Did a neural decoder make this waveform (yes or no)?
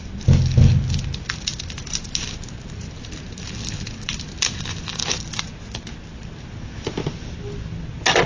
no